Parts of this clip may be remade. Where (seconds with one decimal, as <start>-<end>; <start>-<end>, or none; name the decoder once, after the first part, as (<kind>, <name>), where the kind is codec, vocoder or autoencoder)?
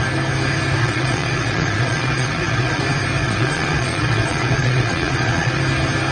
0.8-2.8 (vocoder, Vocos); 3.2-5.6